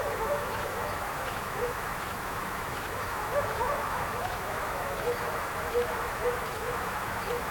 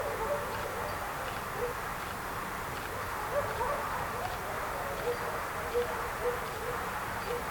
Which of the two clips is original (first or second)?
second